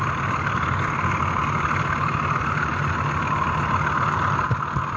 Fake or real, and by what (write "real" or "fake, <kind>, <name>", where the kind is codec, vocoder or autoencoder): real